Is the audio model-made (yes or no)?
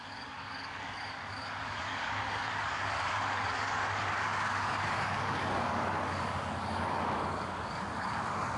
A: yes